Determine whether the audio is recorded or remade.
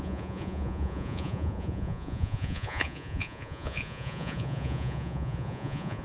remade